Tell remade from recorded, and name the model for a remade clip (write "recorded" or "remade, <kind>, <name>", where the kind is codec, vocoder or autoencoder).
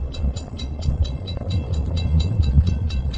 remade, vocoder, Vocos